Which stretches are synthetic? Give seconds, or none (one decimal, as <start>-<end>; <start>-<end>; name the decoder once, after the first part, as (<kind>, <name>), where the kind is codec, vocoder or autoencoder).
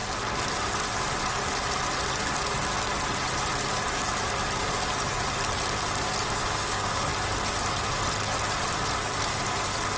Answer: 6.4-7.0 (codec, DAC)